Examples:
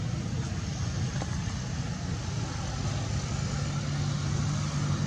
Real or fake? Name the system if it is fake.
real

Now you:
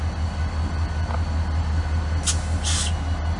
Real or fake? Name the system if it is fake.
real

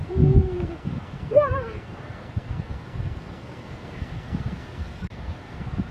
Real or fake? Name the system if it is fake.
fake, codec, SNAC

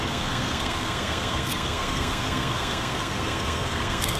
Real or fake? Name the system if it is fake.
fake, codec, SNAC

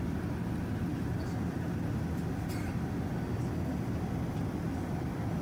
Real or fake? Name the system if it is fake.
real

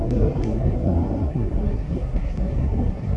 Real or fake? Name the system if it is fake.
fake, codec, SNAC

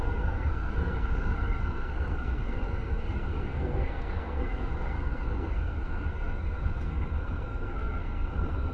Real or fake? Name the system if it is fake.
fake, codec, SNAC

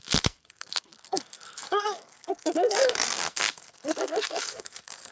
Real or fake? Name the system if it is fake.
fake, codec, SNAC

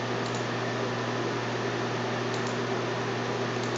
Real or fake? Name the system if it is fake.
real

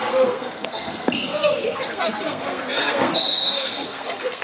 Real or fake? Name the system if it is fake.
fake, codec, SNAC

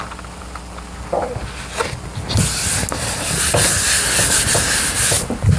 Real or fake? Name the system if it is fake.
real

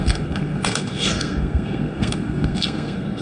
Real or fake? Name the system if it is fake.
fake, codec, SNAC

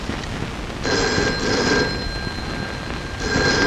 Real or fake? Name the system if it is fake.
real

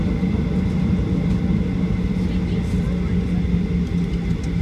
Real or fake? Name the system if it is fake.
real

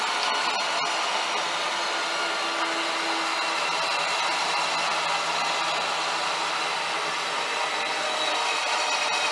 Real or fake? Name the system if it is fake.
real